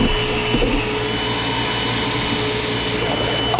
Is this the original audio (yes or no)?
yes